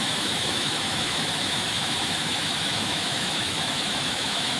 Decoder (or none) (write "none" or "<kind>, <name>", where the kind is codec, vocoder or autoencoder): autoencoder, DAC-VAE